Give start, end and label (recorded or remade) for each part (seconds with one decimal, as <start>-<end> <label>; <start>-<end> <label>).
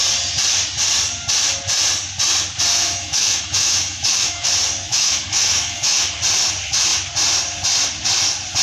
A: 0.0-2.7 recorded; 2.7-4.5 remade; 4.5-4.9 recorded; 4.9-6.0 remade; 6.0-8.6 recorded